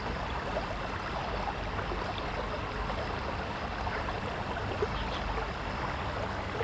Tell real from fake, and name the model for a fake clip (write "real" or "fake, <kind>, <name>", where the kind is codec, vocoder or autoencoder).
real